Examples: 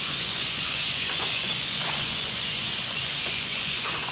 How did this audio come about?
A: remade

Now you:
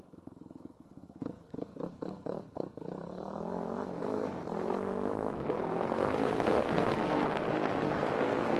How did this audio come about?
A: remade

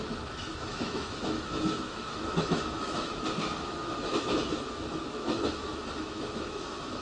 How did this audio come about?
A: remade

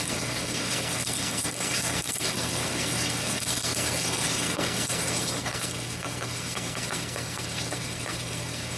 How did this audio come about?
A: remade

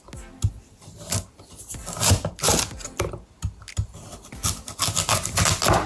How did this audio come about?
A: recorded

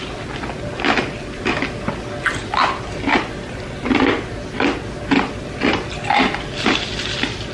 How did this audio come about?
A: recorded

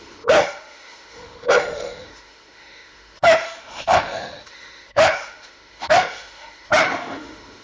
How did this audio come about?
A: remade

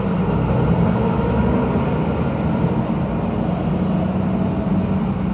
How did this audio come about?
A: recorded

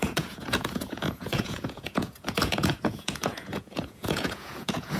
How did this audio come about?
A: remade